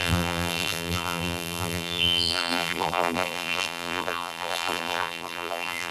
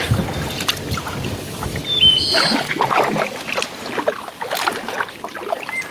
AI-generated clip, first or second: first